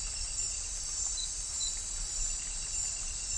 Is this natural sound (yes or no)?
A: yes